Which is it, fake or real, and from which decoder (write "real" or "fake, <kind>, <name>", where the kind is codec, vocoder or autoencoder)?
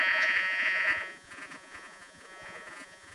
fake, vocoder, Vocos